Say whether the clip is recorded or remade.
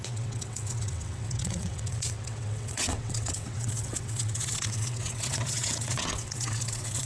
remade